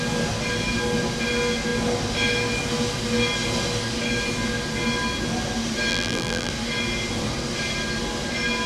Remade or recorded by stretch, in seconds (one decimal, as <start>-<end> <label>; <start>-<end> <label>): 0.0-5.9 recorded; 5.9-6.5 remade; 6.5-8.7 recorded